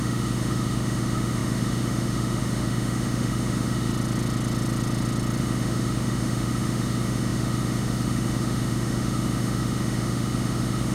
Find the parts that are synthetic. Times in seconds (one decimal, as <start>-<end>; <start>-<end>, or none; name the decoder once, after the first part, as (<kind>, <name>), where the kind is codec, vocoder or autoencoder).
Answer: 0.0-3.9 (autoencoder, DAC-VAE); 5.4-10.9